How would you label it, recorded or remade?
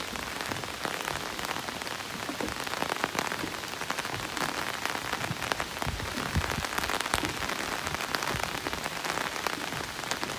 recorded